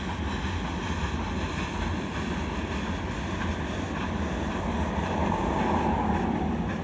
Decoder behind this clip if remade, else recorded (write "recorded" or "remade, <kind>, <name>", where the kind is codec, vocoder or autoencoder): recorded